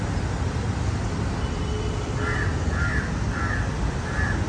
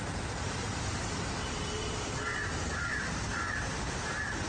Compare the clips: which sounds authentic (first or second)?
first